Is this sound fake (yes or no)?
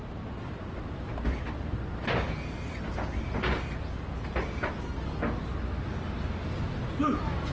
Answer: no